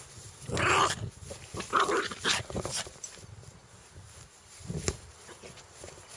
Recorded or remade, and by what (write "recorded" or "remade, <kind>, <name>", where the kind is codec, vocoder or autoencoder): recorded